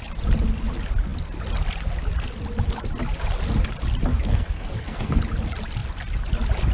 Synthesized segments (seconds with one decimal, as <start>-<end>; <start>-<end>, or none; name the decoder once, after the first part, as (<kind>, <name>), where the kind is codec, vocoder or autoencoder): 4.1-5.2 (codec, SNAC)